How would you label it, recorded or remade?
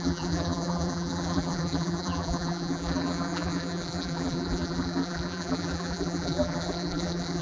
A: remade